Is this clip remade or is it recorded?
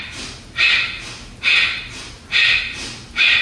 recorded